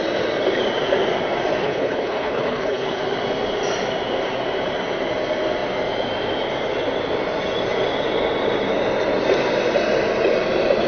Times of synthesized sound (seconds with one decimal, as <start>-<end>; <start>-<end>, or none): 1.6-3.0